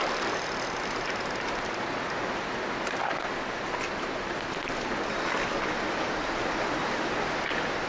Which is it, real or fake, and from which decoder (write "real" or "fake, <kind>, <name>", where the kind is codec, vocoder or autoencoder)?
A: real